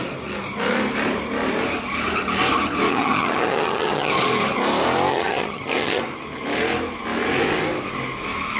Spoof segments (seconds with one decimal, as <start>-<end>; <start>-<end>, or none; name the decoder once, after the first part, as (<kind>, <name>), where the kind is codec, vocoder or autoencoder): 2.9-4.1 (vocoder, HiFi-GAN); 5.1-6.0